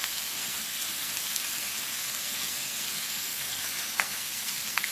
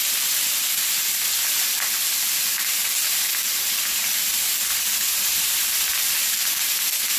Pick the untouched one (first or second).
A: second